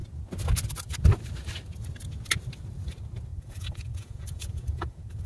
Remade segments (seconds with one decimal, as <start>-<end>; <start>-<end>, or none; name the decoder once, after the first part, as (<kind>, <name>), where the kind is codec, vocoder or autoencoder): 3.3-5.3 (vocoder, Vocos)